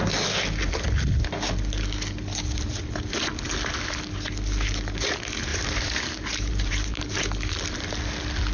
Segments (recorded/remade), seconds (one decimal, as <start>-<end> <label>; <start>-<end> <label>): 0.0-5.5 recorded; 5.5-7.2 remade; 7.2-8.5 recorded